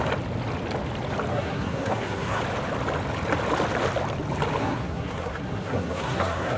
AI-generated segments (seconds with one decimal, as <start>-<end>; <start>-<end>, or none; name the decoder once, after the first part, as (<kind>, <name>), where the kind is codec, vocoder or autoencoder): 1.3-2.4 (codec, SNAC); 4.6-6.6